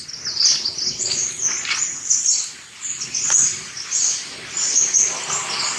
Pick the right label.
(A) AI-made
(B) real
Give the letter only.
B